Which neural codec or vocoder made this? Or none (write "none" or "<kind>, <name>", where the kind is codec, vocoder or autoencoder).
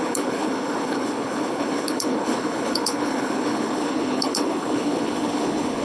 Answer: codec, HILCodec